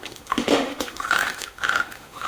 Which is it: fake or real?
fake